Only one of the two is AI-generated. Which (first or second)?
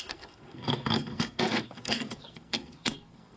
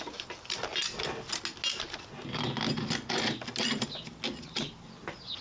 first